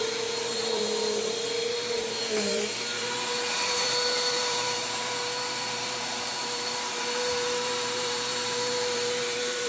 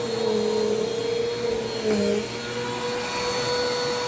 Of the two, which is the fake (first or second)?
first